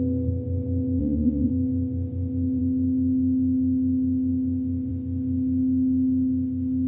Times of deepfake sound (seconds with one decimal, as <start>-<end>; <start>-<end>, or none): 1.0-1.5